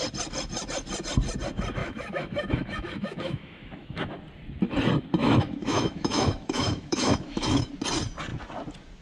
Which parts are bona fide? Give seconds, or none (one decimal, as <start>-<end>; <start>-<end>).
0.0-1.8; 4.1-5.2; 7.7-9.0